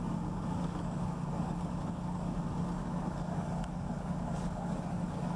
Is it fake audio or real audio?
fake